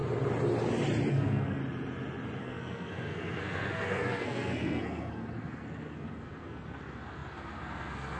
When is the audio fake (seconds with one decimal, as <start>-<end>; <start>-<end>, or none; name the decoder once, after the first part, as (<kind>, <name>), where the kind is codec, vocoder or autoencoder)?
1.1-1.6 (codec, SNAC); 2.4-8.2

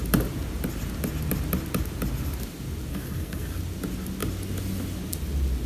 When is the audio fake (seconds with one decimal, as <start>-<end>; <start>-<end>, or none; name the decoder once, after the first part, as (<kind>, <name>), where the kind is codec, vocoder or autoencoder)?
2.9-3.6 (codec, SNAC)